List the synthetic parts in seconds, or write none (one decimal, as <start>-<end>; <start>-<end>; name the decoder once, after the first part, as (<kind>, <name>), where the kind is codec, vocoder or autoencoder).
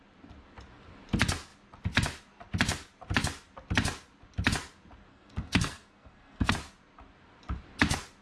5.1-6.5 (codec, SNAC)